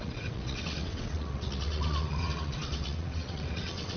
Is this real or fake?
fake